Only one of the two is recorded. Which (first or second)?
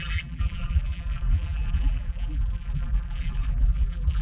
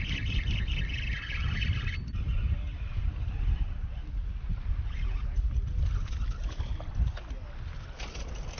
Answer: second